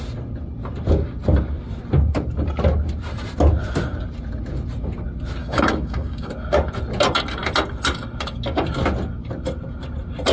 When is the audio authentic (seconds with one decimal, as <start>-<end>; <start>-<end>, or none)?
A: 0.0-5.4; 6.3-10.3